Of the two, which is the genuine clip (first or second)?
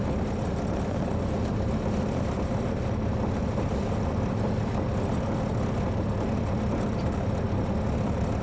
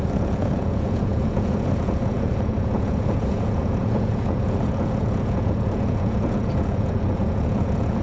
first